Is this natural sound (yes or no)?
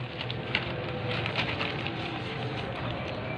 yes